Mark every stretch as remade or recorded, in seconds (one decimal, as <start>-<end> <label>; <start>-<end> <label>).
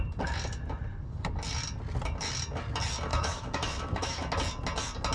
0.0-3.1 recorded; 3.1-4.3 remade; 4.3-5.1 recorded